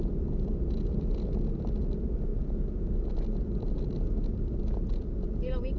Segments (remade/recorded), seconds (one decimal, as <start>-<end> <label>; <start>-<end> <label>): 0.0-5.8 recorded